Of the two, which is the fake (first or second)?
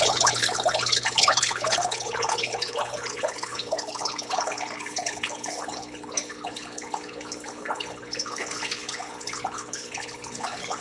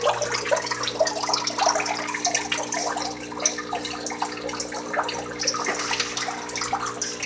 first